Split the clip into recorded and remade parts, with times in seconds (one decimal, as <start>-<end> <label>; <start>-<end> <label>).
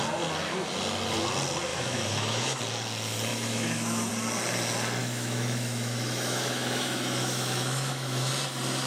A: 0.0-1.7 recorded; 1.7-2.6 remade; 2.6-3.3 recorded; 3.3-4.1 remade; 4.1-5.0 recorded; 5.0-8.3 remade; 8.3-8.9 recorded